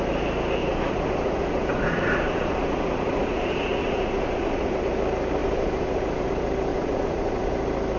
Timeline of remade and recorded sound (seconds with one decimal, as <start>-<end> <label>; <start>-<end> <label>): 0.0-0.6 recorded; 0.6-4.8 remade; 4.8-5.4 recorded; 5.4-6.3 remade; 6.3-6.7 recorded; 6.7-7.5 remade; 7.5-8.0 recorded